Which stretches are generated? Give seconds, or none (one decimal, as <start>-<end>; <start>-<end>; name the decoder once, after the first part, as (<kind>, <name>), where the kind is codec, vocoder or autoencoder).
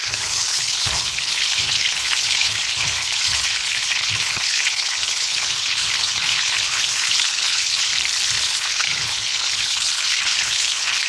0.0-7.9 (codec, HILCodec); 8.4-11.1